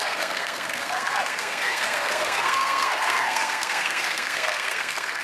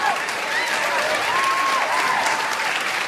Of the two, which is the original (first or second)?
second